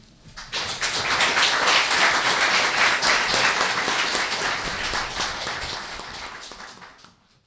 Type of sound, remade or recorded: recorded